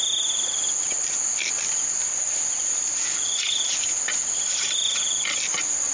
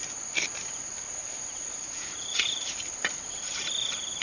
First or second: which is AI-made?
second